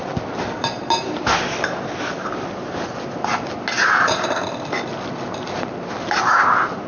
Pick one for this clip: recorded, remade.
recorded